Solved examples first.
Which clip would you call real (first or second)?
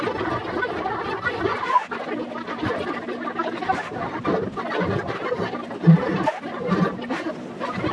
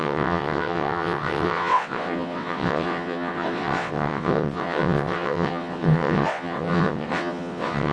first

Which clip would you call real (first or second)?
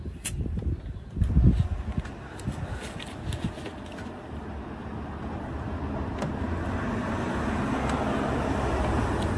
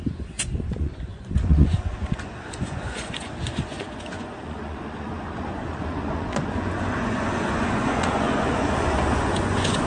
first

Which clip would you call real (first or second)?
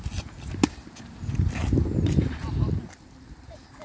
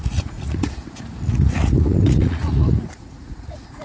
first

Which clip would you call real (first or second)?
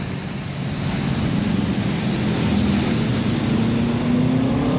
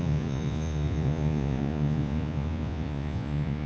first